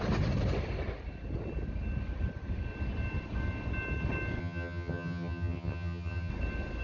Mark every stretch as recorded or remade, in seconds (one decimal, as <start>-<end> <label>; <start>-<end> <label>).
0.0-4.4 recorded; 4.4-6.3 remade; 6.3-6.8 recorded